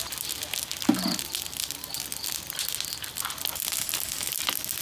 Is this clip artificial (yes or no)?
no